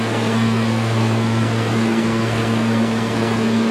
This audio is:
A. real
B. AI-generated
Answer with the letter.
B